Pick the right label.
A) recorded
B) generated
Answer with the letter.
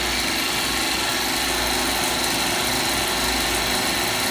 A